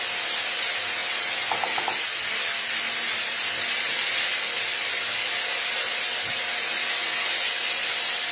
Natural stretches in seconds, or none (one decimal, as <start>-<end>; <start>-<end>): 0.0-8.3

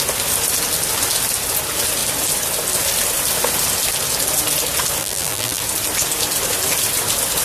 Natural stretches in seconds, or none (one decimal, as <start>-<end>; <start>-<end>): 0.0-5.0; 5.6-7.4

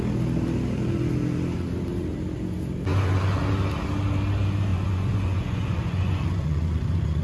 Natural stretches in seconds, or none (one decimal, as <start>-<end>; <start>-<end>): 0.0-4.7

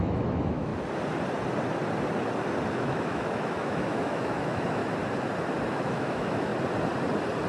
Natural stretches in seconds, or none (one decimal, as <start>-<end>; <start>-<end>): 0.7-2.7; 4.8-5.7; 6.5-7.5

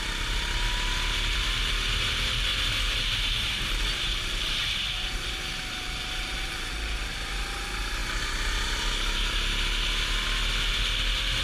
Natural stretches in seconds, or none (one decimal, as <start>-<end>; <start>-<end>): 0.0-2.5; 6.7-11.4